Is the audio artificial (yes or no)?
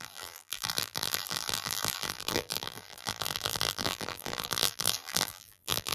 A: yes